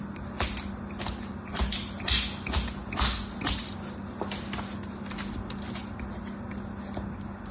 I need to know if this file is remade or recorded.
recorded